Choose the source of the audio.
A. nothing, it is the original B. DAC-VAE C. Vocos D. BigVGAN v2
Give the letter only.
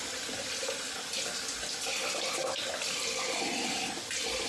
A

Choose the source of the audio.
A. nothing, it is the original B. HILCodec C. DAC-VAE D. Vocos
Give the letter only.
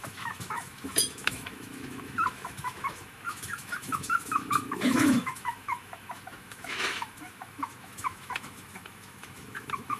C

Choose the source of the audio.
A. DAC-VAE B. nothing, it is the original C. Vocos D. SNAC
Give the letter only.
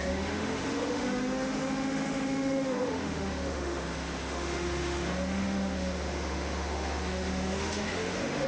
A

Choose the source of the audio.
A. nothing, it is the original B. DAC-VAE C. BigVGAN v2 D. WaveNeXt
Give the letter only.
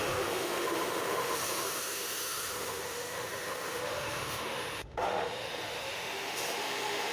B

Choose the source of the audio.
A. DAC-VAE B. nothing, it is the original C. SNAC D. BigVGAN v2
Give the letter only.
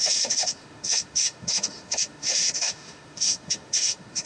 A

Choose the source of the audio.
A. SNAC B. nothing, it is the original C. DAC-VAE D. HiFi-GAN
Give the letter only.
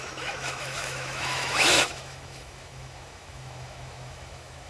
C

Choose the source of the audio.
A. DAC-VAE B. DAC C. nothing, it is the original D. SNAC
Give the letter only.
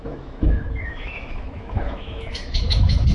A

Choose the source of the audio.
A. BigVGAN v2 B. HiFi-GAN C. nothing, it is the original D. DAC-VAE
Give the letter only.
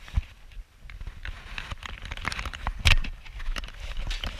C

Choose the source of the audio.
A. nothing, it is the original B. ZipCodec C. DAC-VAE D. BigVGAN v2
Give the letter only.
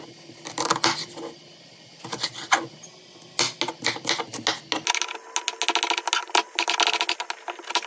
A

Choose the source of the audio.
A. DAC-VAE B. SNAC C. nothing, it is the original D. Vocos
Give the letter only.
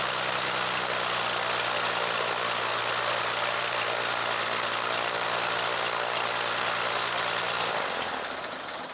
C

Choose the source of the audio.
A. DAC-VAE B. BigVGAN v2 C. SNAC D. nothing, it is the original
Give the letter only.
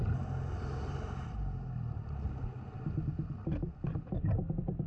D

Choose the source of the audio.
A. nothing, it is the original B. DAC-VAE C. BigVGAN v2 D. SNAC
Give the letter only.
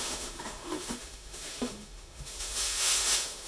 B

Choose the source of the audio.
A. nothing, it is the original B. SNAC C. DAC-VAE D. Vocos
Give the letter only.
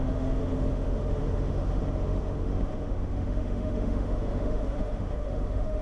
C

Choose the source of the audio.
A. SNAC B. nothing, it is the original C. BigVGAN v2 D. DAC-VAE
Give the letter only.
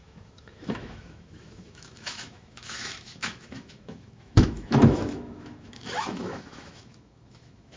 D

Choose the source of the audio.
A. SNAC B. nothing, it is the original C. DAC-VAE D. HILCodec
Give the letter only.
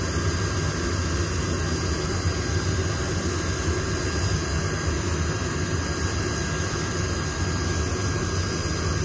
B